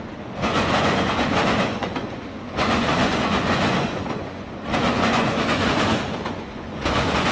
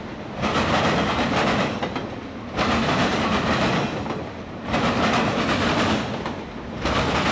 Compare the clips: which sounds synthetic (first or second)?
first